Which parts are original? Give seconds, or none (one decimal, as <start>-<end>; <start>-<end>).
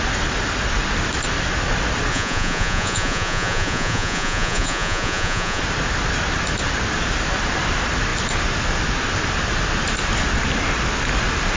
0.0-2.1; 5.6-11.6